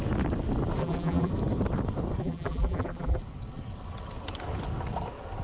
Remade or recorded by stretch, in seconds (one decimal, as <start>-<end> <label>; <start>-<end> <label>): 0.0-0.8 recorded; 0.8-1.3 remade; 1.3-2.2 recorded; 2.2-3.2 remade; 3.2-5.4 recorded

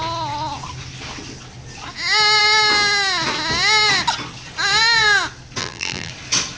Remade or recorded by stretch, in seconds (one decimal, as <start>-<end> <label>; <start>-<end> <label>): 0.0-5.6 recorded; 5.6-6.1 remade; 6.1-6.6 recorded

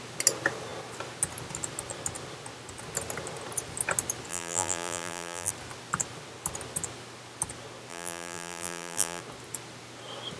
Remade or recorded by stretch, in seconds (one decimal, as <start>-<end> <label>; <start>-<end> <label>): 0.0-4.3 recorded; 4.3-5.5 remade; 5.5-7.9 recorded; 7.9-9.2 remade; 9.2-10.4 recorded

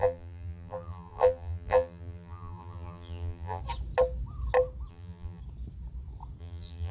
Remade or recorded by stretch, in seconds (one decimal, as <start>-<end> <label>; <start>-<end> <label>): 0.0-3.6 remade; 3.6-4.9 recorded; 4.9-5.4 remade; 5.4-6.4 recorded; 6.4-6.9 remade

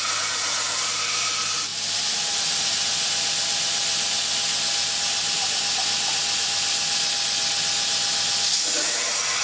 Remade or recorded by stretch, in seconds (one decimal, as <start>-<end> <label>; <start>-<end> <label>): 0.0-1.7 recorded; 1.7-2.3 remade; 2.3-9.4 recorded

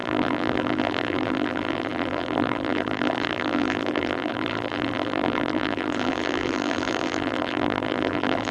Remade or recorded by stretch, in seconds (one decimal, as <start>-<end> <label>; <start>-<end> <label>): 0.0-8.5 remade

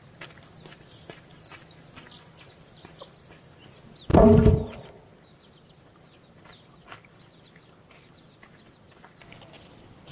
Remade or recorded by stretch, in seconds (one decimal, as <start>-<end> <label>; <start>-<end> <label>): 0.0-10.1 recorded